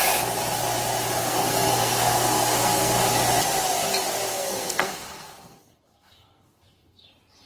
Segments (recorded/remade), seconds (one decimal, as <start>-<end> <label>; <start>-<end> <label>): 0.0-1.2 recorded; 1.2-3.0 remade; 3.0-4.3 recorded; 4.3-7.1 remade; 7.1-7.5 recorded